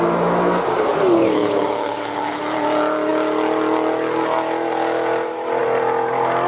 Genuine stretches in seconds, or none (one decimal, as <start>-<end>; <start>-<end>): 0.0-1.2; 2.4-6.5